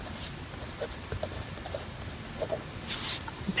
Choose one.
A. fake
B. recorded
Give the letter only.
B